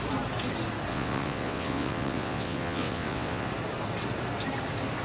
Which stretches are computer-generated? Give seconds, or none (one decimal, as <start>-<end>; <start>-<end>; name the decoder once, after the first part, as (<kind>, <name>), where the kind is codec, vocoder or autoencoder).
0.9-3.5 (vocoder, WaveNeXt)